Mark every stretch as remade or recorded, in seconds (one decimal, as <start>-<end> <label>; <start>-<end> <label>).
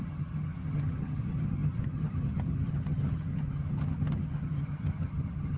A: 0.0-5.6 remade